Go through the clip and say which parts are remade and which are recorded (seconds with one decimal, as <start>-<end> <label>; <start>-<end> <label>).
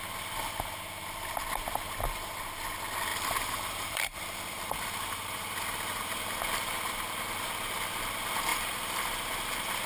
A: 0.0-3.1 recorded; 3.1-6.4 remade; 6.4-8.5 recorded; 8.5-9.0 remade; 9.0-9.9 recorded